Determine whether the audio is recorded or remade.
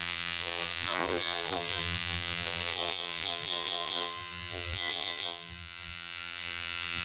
remade